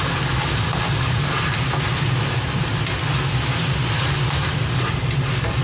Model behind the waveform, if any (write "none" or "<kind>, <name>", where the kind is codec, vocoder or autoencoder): none